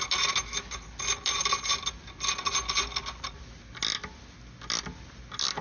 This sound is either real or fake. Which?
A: real